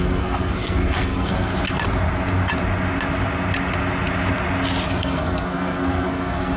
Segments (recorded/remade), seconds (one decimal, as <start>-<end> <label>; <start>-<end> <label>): 0.0-1.5 remade; 1.5-5.0 recorded; 5.0-6.6 remade